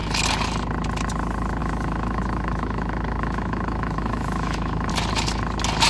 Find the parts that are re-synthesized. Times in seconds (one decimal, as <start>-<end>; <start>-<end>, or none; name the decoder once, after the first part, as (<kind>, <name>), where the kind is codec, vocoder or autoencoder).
1.6-4.9 (autoencoder, DAC-VAE)